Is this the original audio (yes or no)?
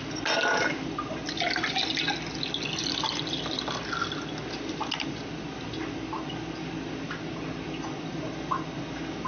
yes